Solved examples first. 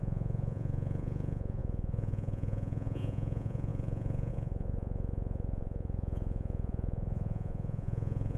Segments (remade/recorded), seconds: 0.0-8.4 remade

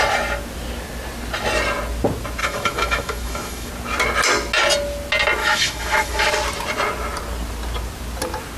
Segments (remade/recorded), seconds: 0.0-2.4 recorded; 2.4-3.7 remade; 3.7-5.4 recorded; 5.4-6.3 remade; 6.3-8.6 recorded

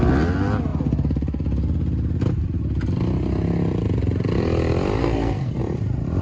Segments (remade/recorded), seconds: 0.0-5.0 recorded; 5.0-5.6 remade; 5.6-6.2 recorded

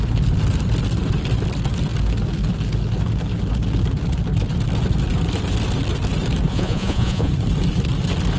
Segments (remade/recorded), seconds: 0.0-6.5 recorded; 6.5-7.3 remade; 7.3-8.4 recorded